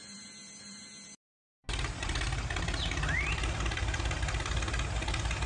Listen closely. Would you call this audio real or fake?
real